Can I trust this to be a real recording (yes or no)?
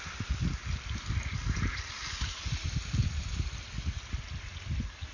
yes